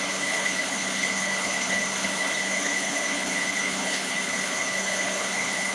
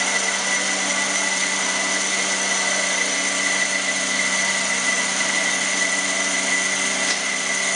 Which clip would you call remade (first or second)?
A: first